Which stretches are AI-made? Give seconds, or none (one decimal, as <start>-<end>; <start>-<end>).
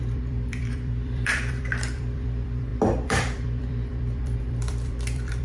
0.0-5.4